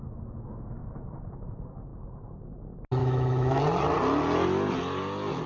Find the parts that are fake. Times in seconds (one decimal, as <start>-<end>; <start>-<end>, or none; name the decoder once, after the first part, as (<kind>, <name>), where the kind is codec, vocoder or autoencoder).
3.0-3.6 (autoencoder, DAC-VAE)